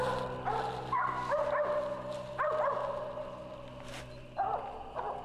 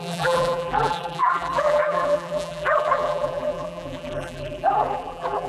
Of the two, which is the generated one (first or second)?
second